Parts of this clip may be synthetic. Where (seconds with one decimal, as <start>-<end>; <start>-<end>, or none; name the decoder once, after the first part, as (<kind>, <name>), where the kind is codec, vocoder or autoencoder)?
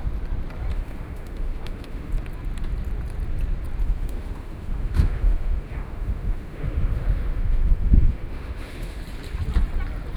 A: 0.7-2.1 (autoencoder, DAC-VAE); 3.8-9.0